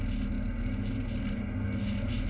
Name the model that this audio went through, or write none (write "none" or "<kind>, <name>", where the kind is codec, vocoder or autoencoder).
none